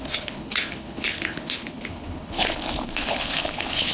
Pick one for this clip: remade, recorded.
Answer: remade